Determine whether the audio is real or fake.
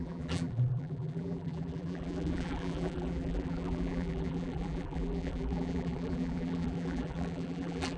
fake